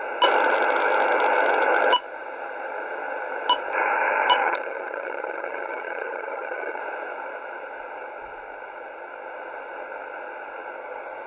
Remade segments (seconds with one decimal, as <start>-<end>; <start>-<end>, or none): 4.4-6.8